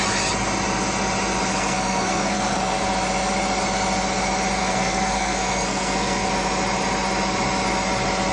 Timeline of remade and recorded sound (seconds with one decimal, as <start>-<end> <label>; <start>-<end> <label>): 0.0-1.5 recorded; 1.5-2.8 remade; 2.8-4.6 recorded; 4.6-6.3 remade; 6.3-8.3 recorded